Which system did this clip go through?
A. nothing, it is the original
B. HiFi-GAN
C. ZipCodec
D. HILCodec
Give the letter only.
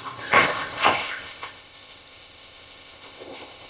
C